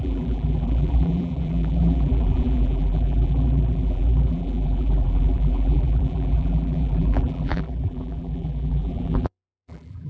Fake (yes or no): yes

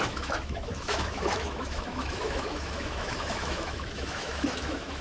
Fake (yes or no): yes